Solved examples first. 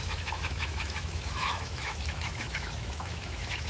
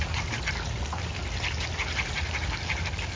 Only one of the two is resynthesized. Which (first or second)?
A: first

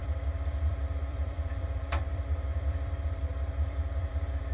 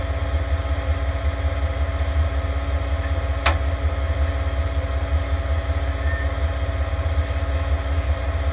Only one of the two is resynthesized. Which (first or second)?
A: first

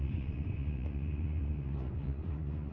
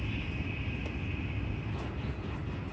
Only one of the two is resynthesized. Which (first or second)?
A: first